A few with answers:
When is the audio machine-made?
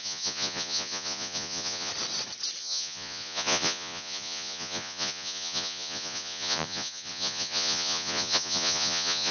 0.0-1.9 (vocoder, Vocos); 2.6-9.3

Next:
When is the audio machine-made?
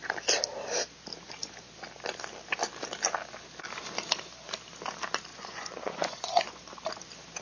5.3-6.6 (vocoder, Vocos)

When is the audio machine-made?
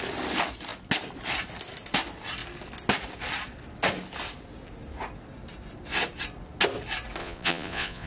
7.2-8.1 (vocoder, Vocos)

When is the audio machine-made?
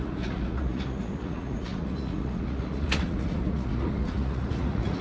0.0-5.0 (vocoder, Vocos)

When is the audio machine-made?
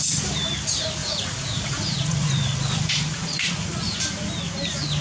1.0-4.0 (vocoder, Vocos)